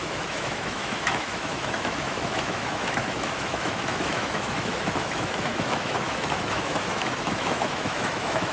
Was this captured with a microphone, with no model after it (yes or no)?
no